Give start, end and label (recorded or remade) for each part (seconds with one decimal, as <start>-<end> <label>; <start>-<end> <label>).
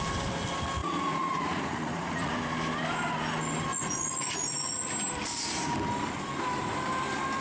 0.0-0.8 recorded; 0.8-2.3 remade; 2.3-3.7 recorded; 3.7-4.9 remade; 4.9-7.4 recorded